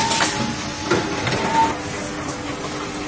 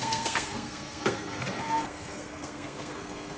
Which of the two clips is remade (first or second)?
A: second